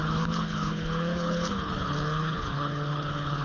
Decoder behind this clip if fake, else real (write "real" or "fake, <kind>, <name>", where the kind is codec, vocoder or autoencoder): fake, codec, HILCodec